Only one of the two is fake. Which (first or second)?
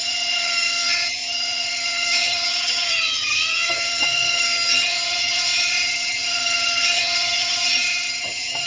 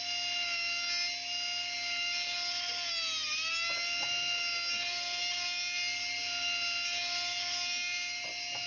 first